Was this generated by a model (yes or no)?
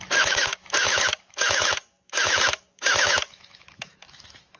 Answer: yes